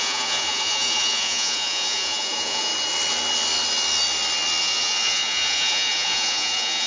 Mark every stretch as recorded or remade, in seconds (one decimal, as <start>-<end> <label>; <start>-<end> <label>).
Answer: 0.0-2.7 remade; 2.7-4.6 recorded; 4.6-6.9 remade